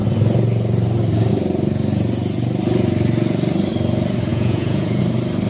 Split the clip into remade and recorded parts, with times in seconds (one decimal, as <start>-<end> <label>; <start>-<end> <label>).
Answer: 0.0-4.3 recorded; 4.3-5.0 remade; 5.0-5.5 recorded